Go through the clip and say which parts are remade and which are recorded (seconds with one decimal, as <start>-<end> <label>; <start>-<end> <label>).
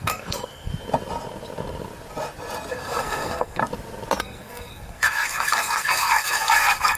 0.0-0.7 remade; 0.7-2.7 recorded; 2.7-3.6 remade; 3.6-4.2 recorded; 4.2-7.0 remade